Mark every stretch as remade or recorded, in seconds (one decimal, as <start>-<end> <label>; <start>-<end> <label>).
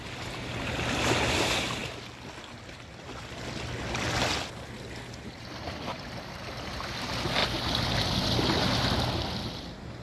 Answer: 0.0-10.0 recorded